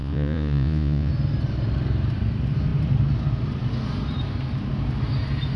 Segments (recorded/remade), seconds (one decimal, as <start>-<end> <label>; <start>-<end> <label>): 0.0-1.1 remade; 1.1-5.6 recorded